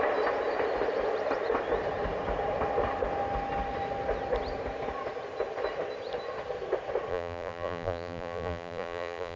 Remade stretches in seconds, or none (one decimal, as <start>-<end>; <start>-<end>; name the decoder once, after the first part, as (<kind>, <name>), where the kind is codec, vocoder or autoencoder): 7.1-9.4 (vocoder, BigVGAN v2)